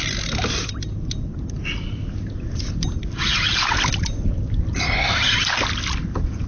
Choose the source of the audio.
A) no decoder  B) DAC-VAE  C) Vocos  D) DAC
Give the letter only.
A